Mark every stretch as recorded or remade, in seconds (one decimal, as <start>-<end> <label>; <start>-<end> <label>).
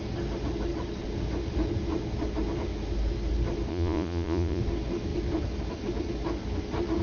0.0-3.7 recorded; 3.7-4.6 remade; 4.6-7.0 recorded